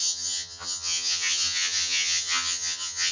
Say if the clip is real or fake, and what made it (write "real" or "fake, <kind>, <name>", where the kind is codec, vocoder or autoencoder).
fake, vocoder, HiFi-GAN